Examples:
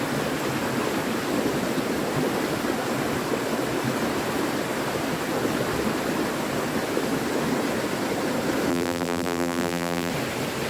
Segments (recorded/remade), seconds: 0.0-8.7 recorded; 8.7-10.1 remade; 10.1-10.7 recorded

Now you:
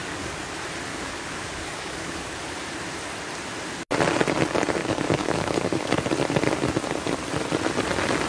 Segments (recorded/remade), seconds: 0.0-0.5 remade; 0.5-0.9 recorded; 0.9-2.4 remade; 2.4-4.8 recorded; 4.8-5.9 remade; 5.9-8.3 recorded

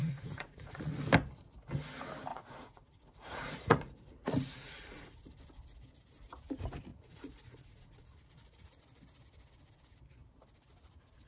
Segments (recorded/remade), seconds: 0.0-0.9 remade; 0.9-2.3 recorded; 2.3-5.4 remade; 5.4-6.9 recorded; 6.9-8.8 remade; 8.8-11.3 recorded

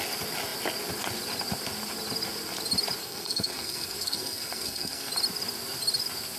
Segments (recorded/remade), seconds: 0.0-3.0 recorded; 3.0-5.1 remade; 5.1-6.4 recorded